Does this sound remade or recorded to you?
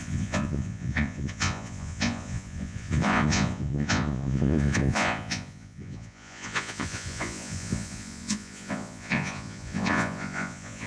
remade